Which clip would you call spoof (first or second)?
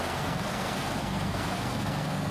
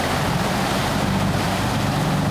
first